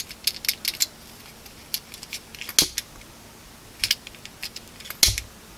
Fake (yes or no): no